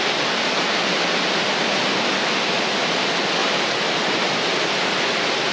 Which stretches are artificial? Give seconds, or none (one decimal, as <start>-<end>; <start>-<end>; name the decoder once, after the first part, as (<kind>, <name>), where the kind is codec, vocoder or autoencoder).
none